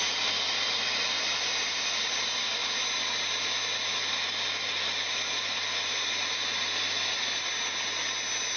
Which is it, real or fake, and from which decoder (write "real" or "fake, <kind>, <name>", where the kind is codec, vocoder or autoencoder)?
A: real